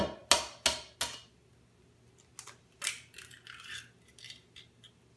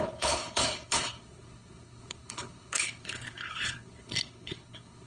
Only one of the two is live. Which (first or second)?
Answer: first